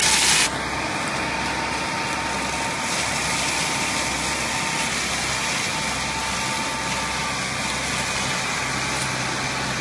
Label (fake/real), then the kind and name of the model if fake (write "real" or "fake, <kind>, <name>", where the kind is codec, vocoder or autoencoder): real